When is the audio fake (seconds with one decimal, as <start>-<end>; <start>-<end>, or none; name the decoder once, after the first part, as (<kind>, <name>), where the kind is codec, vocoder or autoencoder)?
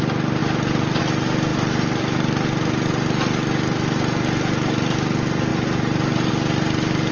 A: none